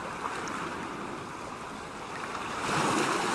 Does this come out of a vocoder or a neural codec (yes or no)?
no